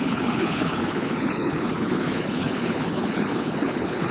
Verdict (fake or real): fake